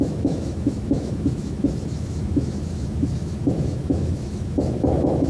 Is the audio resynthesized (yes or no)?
yes